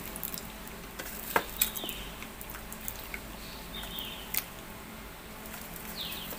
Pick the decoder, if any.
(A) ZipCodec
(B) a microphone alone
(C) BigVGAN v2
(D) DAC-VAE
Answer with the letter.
B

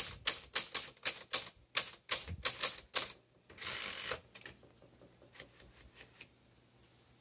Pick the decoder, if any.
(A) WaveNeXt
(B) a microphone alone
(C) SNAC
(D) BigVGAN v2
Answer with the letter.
B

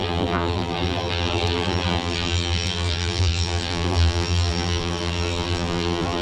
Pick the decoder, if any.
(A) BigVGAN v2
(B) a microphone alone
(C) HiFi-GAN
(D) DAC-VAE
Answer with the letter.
A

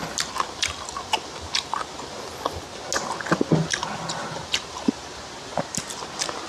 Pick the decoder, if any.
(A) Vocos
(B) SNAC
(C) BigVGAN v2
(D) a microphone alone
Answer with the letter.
D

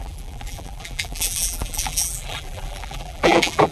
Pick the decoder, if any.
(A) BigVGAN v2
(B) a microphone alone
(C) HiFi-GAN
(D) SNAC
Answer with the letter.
A